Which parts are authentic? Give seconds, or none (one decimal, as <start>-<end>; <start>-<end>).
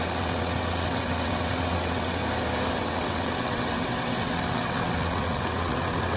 2.2-2.7